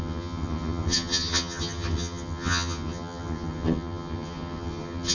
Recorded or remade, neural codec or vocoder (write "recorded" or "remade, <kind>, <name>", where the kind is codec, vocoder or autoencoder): remade, vocoder, HiFi-GAN